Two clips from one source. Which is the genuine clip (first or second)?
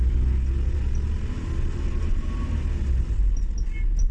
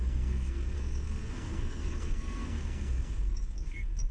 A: first